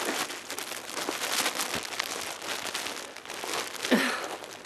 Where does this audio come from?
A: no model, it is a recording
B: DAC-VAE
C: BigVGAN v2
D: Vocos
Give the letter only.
A